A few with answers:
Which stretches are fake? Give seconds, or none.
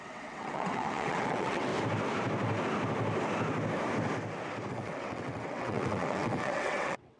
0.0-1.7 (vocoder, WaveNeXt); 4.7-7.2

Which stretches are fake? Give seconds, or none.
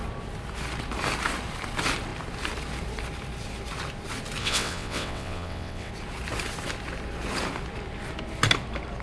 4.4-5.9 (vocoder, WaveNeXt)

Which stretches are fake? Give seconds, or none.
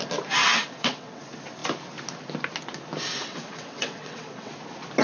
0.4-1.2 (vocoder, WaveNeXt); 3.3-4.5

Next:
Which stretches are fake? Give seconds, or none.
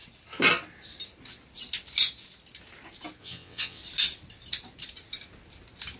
3.2-3.8 (vocoder, WaveNeXt)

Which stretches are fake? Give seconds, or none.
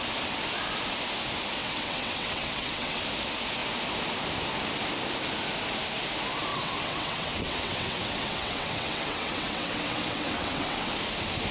1.6-3.0 (vocoder, WaveNeXt); 6.5-10.9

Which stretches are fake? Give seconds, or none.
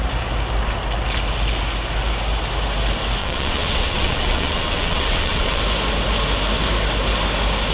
3.2-5.6 (vocoder, WaveNeXt)